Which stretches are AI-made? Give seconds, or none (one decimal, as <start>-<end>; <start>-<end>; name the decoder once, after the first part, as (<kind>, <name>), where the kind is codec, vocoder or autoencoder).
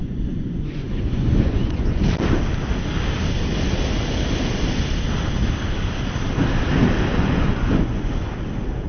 0.0-2.0 (vocoder, Vocos); 7.1-8.3